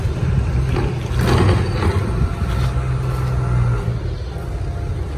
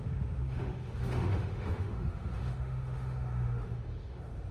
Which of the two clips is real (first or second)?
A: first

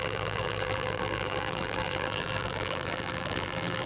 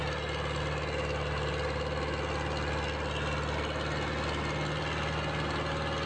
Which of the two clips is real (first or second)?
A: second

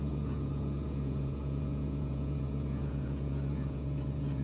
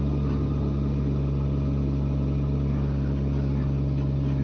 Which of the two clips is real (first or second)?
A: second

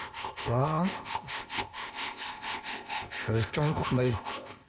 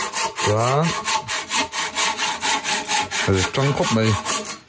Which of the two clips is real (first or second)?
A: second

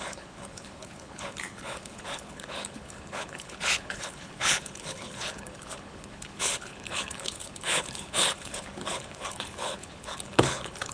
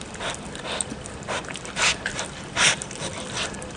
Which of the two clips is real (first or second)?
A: second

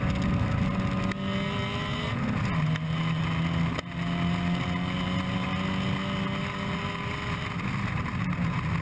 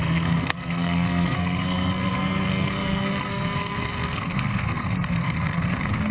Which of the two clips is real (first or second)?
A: first